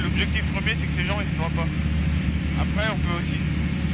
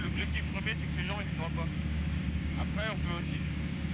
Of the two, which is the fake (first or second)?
second